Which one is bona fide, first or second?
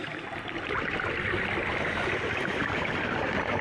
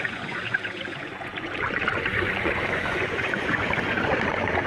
first